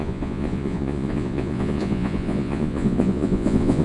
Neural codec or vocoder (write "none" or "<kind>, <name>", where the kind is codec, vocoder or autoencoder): vocoder, Vocos